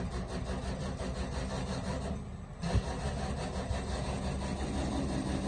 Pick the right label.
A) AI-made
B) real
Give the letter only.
B